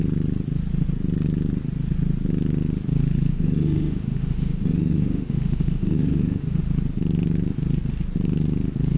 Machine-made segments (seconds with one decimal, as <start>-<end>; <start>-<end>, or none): 3.3-6.6